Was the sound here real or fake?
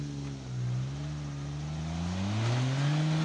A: real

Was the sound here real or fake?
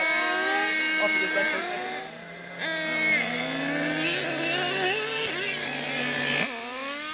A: real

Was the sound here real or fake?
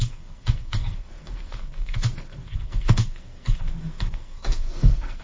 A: fake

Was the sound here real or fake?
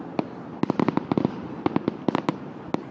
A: real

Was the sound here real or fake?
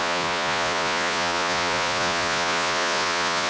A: fake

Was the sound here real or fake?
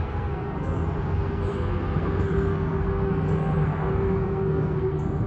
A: fake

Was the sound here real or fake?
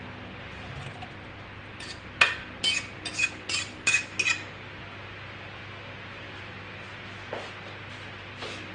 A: real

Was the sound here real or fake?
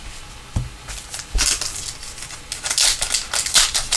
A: real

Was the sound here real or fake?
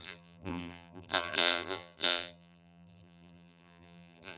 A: fake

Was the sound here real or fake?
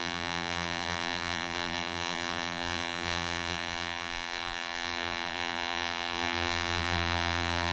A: fake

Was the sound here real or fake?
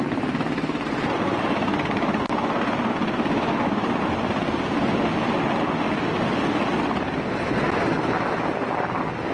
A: real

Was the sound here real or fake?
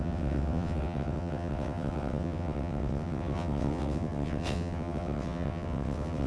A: fake